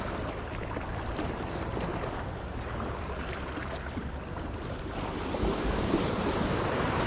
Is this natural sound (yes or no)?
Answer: no